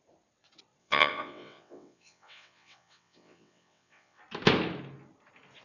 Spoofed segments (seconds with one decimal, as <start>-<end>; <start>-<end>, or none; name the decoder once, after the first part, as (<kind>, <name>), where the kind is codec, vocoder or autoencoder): 0.8-4.2 (vocoder, WaveNeXt)